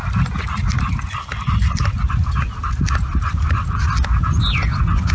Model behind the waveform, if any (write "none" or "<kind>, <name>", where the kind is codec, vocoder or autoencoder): none